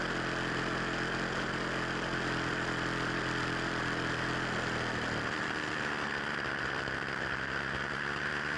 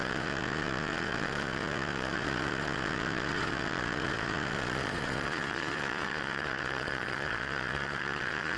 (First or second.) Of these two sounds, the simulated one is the second